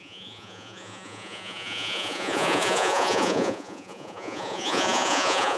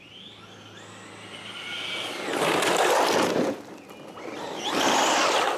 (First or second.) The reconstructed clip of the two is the first